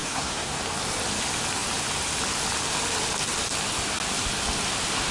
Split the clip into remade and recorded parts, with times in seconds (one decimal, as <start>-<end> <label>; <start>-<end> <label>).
0.0-0.6 remade; 0.6-5.1 recorded